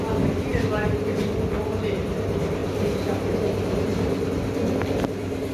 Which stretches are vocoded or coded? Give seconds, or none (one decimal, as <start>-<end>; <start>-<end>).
none